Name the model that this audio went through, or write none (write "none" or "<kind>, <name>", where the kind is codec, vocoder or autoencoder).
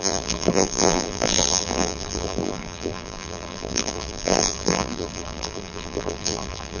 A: vocoder, BigVGAN v2